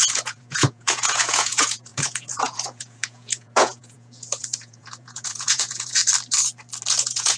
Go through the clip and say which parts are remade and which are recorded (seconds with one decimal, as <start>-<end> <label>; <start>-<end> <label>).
0.0-6.0 remade; 6.0-6.9 recorded; 6.9-7.4 remade